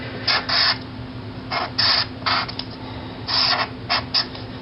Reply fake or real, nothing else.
real